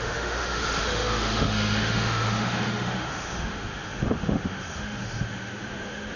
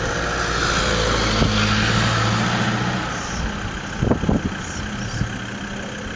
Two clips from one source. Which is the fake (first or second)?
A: first